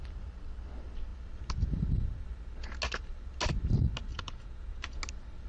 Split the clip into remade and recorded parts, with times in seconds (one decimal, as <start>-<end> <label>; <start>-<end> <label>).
0.0-4.1 recorded; 4.1-5.0 remade; 5.0-5.5 recorded